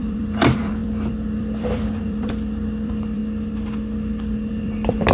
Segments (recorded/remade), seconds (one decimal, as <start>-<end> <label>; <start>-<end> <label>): 0.0-3.2 remade; 3.2-4.5 recorded; 4.5-5.1 remade